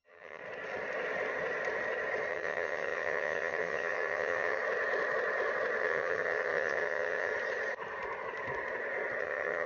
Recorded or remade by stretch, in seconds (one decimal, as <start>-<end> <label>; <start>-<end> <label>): 0.0-0.4 remade; 0.4-2.3 recorded; 2.3-4.6 remade; 4.6-5.8 recorded; 5.8-7.3 remade; 7.3-9.2 recorded; 9.2-9.7 remade